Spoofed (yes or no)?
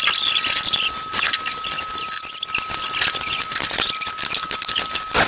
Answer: no